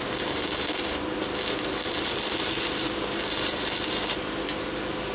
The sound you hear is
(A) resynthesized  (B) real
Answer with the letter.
B